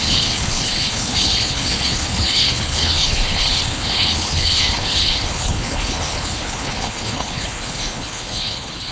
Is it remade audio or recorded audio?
remade